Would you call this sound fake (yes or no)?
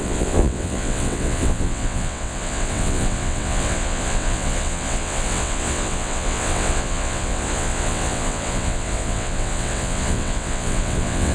yes